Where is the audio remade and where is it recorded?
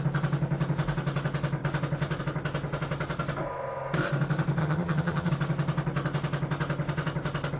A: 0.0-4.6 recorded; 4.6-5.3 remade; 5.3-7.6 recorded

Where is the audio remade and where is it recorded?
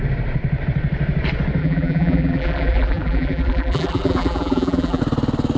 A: 0.0-1.6 recorded; 1.6-5.0 remade; 5.0-5.6 recorded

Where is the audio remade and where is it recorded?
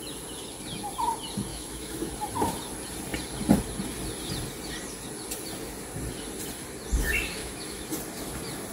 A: 0.0-1.5 recorded; 1.5-2.1 remade; 2.1-7.4 recorded; 7.4-7.9 remade; 7.9-8.7 recorded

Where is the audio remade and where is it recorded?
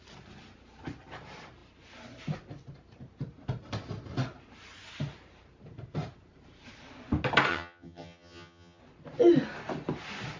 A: 0.0-7.5 recorded; 7.5-8.8 remade; 8.8-10.4 recorded